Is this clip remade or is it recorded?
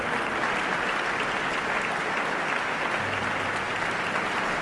recorded